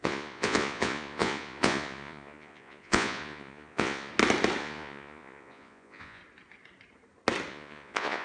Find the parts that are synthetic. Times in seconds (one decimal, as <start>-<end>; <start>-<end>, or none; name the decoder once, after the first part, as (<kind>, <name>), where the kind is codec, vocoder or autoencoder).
0.0-4.1 (vocoder, Vocos); 4.6-6.2; 7.5-8.2